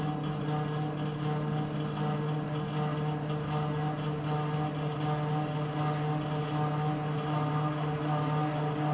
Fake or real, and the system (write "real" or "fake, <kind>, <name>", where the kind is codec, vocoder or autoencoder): real